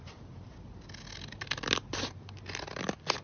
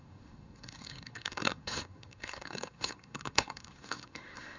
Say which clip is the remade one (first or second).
second